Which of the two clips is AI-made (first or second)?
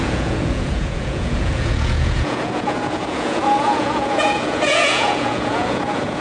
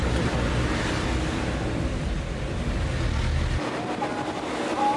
first